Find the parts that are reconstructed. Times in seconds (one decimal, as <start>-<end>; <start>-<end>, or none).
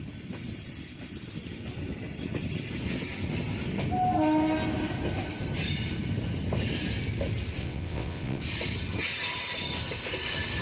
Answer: 7.6-8.4